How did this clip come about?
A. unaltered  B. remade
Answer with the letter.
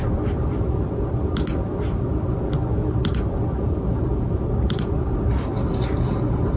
A